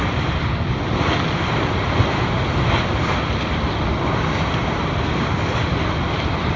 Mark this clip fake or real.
real